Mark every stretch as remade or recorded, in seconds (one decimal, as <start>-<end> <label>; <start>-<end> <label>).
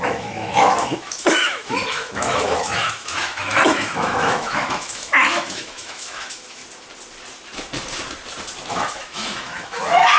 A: 0.0-6.6 remade; 6.6-8.7 recorded; 8.7-10.2 remade